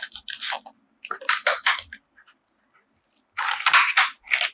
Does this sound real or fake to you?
real